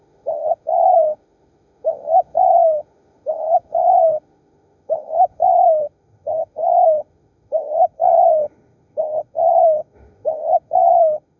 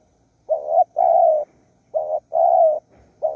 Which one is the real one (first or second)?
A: second